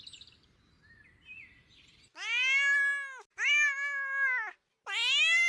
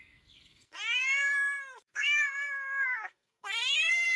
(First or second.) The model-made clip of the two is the second